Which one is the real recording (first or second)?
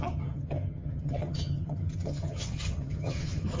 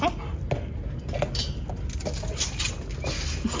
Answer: second